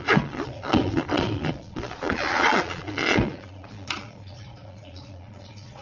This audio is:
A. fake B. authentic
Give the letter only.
A